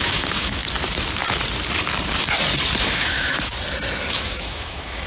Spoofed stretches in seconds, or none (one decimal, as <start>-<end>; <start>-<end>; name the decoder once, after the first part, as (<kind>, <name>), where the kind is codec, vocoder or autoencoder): 0.0-0.6 (autoencoder, DAC-VAE); 2.8-3.5; 4.1-5.1